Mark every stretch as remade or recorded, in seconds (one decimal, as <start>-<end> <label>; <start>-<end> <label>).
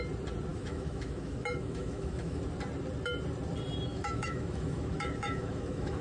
0.0-0.5 recorded; 0.5-2.4 remade; 2.4-3.9 recorded; 3.9-6.0 remade